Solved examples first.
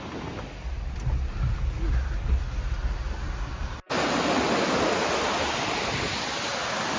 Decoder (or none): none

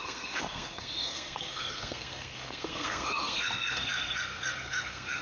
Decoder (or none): codec, SNAC